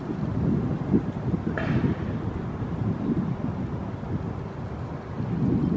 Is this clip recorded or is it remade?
recorded